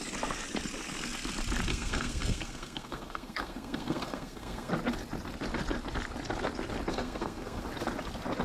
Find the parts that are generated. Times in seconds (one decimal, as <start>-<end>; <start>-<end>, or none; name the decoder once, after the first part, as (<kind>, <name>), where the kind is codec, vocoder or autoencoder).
1.7-4.7 (codec, SNAC); 6.9-7.6